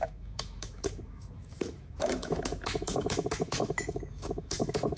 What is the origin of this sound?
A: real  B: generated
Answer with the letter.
B